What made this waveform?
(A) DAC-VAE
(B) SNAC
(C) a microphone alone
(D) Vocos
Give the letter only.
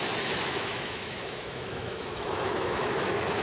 A